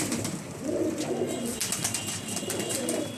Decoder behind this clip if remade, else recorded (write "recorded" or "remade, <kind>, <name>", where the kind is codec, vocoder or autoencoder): recorded